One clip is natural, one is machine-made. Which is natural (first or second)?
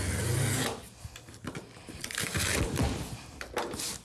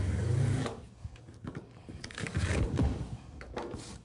first